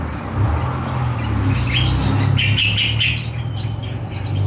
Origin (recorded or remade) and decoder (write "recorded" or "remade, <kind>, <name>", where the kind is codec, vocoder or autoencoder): recorded